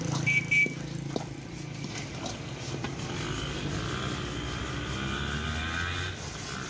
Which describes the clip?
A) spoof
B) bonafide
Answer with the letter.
B